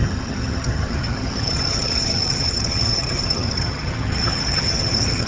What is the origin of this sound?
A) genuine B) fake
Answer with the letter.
B